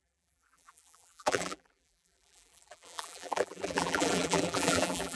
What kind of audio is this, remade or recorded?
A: remade